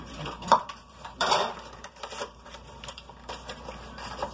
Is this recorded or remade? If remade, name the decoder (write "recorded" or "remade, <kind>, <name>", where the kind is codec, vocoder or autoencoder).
remade, vocoder, BigVGAN v2